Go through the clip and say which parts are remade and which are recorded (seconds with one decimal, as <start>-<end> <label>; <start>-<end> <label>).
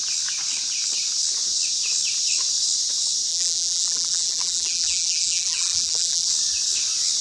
0.0-3.3 recorded; 3.3-6.3 remade; 6.3-7.2 recorded